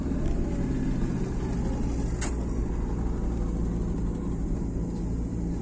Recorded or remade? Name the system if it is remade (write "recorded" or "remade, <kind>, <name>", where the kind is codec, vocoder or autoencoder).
recorded